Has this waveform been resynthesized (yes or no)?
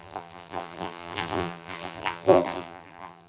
yes